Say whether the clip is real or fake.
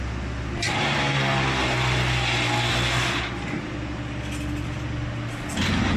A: real